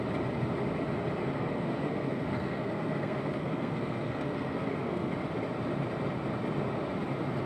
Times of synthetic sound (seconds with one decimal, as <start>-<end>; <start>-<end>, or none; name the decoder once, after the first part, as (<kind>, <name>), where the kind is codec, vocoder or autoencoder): 1.2-5.1 (codec, SNAC)